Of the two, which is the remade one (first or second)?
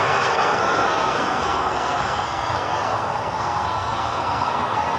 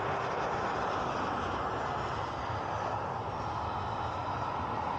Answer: first